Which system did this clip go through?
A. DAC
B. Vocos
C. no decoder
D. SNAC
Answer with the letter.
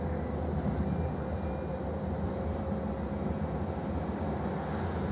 C